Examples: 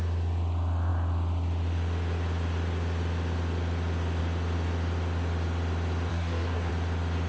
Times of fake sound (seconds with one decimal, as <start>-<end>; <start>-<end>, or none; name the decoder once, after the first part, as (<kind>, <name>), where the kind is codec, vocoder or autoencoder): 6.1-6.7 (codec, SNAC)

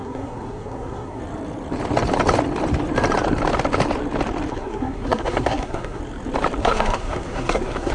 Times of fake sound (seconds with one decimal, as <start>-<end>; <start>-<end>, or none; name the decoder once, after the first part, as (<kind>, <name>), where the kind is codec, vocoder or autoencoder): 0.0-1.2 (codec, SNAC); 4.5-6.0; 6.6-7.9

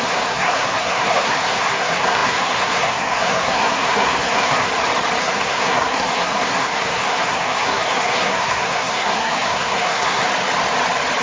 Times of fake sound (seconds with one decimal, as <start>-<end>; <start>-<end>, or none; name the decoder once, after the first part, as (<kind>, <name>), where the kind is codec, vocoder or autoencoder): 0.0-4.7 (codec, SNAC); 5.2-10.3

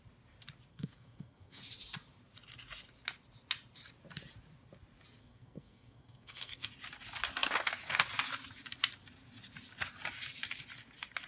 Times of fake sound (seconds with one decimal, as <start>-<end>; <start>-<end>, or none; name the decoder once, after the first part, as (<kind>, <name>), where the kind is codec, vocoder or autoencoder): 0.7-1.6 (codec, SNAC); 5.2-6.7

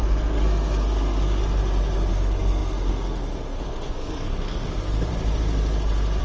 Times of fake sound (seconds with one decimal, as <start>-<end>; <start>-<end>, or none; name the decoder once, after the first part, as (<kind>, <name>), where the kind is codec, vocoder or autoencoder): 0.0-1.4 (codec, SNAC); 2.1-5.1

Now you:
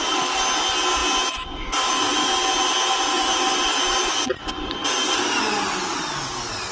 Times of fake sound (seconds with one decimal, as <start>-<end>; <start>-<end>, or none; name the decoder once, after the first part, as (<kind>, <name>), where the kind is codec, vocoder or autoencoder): none

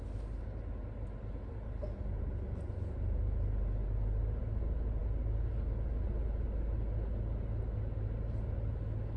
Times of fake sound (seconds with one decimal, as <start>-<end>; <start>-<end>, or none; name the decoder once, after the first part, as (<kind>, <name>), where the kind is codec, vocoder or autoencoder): none